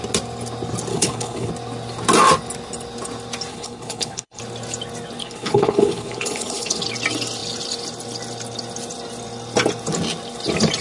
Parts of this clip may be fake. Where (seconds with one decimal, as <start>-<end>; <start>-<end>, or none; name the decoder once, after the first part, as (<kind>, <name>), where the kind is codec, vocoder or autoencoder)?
0.9-1.5 (codec, HILCodec); 3.5-4.4; 5.2-6.8